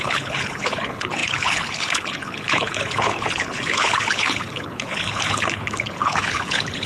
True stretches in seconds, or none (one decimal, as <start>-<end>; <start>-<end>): none

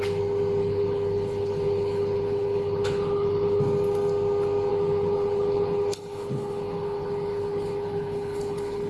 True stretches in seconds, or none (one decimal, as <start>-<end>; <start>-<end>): 0.0-0.6; 3.6-4.7

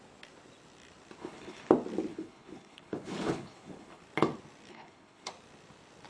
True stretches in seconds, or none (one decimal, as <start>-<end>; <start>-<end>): 0.0-1.2; 1.7-2.1; 4.0-4.7; 5.3-6.1

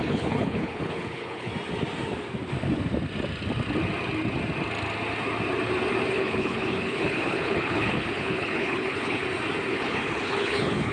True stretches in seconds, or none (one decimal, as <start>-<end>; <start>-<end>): 1.5-6.1; 9.2-9.7

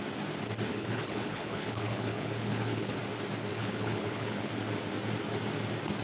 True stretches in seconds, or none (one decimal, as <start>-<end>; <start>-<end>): 0.0-0.7; 3.0-3.5; 4.5-6.0

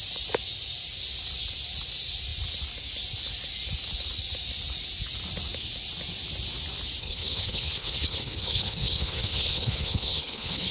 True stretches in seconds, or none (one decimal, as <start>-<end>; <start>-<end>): 0.0-7.0

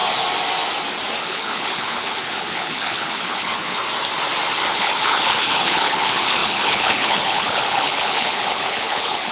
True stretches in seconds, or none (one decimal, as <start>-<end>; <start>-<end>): 0.0-1.2; 3.8-4.7